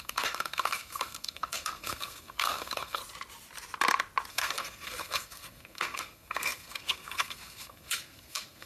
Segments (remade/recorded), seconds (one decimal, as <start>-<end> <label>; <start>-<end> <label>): 0.0-3.0 remade; 3.0-4.3 recorded; 4.3-8.7 remade